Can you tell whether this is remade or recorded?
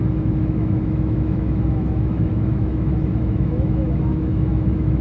remade